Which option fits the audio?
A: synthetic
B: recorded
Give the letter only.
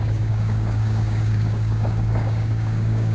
A